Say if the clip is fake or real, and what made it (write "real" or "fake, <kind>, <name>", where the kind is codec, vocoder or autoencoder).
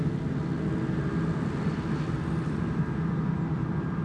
real